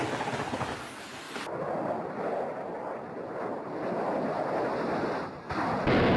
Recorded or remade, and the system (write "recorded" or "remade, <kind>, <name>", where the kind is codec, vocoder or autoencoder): recorded